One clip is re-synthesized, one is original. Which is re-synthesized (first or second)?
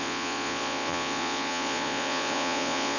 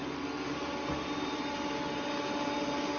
first